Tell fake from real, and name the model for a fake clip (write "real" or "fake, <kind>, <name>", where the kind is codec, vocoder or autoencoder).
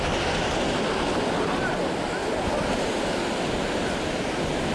real